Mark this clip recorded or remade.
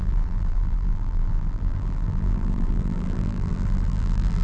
remade